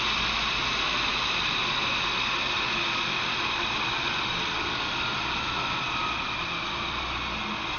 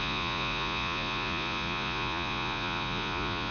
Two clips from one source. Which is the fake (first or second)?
second